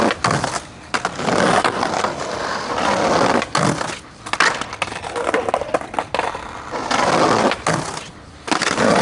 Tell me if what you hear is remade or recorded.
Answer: recorded